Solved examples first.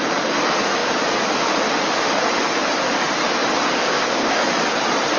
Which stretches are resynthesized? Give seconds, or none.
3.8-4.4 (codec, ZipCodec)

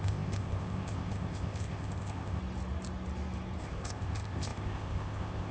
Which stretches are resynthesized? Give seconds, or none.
0.0-2.4 (codec, ZipCodec); 3.6-5.5

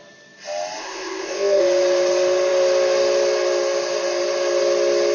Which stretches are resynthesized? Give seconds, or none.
0.8-1.6 (codec, ZipCodec)

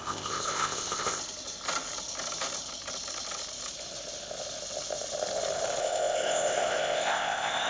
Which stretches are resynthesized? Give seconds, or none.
0.0-1.2 (codec, ZipCodec); 5.8-7.7

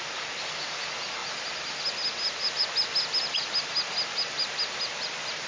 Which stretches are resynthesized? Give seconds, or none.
none

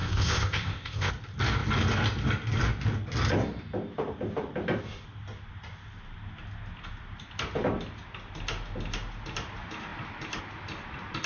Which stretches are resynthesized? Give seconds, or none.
0.0-1.1 (codec, ZipCodec)

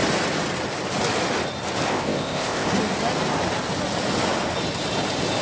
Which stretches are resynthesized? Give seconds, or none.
1.9-2.7 (codec, ZipCodec)